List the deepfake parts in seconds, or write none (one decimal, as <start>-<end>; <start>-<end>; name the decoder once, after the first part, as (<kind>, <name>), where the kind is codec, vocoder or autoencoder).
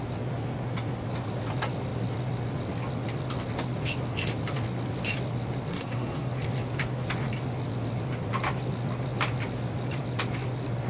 5.7-6.3 (codec, SNAC)